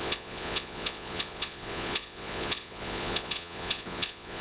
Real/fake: fake